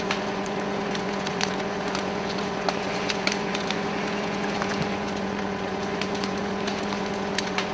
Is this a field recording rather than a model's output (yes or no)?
no